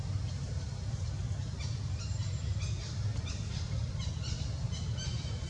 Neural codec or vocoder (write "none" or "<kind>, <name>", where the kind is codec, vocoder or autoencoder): none